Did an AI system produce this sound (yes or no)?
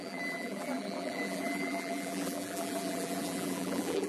yes